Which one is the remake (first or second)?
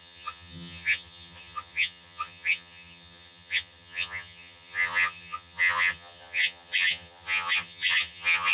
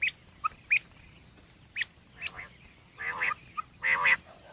first